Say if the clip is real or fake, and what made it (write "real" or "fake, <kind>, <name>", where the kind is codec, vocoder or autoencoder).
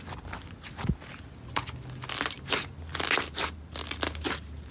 real